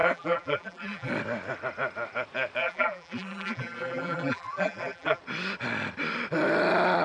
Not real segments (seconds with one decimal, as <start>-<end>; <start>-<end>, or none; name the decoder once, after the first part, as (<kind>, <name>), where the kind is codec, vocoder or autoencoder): 0.0-1.1 (vocoder, BigVGAN v2); 2.6-5.2